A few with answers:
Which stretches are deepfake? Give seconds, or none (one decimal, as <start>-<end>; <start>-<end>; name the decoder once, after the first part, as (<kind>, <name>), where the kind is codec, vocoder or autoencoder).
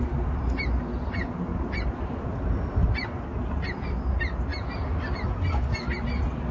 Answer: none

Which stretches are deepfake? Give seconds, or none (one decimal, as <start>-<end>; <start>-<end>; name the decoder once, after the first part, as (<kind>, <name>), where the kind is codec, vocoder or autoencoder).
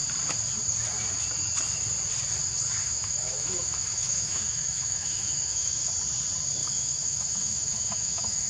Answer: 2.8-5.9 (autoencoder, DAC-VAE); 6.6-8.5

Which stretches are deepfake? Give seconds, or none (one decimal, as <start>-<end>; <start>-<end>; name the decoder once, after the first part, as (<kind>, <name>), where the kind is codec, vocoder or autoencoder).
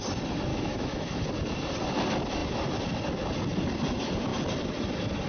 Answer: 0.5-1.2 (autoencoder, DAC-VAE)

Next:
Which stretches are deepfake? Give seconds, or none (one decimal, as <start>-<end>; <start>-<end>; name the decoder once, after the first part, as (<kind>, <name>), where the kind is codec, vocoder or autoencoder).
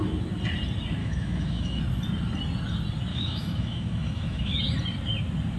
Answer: 1.0-1.8 (autoencoder, DAC-VAE); 3.1-4.6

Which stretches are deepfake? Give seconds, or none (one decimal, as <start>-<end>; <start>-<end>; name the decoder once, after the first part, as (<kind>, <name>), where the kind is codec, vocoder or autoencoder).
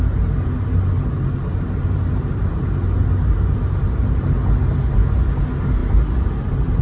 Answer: none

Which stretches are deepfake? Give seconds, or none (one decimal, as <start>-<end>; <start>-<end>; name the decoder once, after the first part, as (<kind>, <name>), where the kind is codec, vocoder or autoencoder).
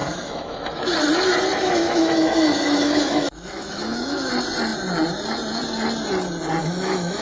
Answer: 0.0-0.8 (autoencoder, DAC-VAE); 1.5-4.3; 6.6-7.2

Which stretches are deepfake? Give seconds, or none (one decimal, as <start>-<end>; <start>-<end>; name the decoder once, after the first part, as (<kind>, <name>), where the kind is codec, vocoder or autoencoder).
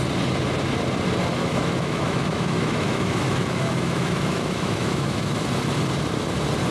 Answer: 1.4-5.4 (autoencoder, DAC-VAE)